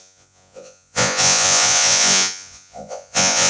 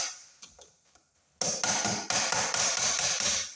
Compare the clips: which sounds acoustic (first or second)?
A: second